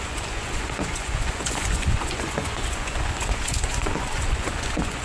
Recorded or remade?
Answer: remade